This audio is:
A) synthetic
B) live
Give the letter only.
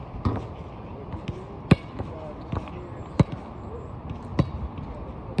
B